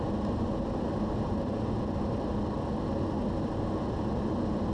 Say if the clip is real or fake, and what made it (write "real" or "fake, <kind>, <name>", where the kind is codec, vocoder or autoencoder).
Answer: real